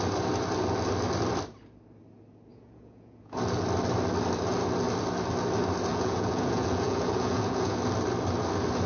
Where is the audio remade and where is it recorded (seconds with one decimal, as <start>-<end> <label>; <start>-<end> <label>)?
0.0-2.5 recorded; 2.5-3.4 remade; 3.4-5.9 recorded; 5.9-7.8 remade; 7.8-8.9 recorded